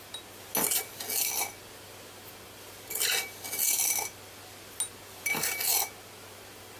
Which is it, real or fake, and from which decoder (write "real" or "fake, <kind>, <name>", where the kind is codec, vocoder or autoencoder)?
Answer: real